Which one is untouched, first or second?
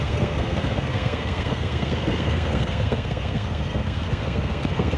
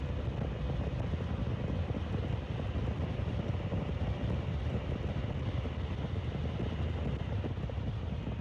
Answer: second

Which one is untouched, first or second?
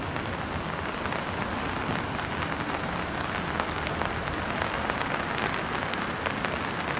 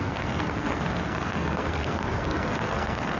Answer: first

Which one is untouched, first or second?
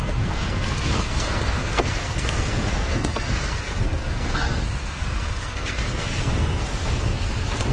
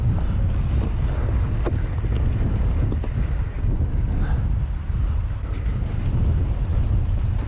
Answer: second